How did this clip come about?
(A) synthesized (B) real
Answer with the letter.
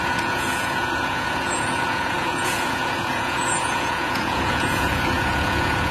A